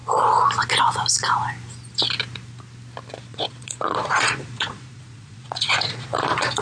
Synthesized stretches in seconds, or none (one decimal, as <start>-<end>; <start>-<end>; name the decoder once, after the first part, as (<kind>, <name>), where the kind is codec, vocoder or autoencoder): 3.3-6.6 (vocoder, Vocos)